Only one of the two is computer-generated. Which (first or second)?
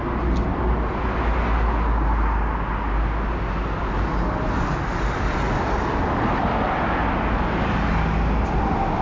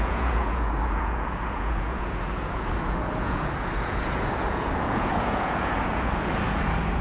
second